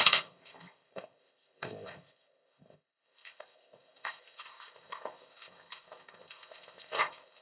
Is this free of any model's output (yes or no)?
no